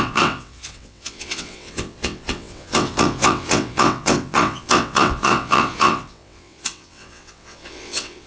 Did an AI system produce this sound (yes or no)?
yes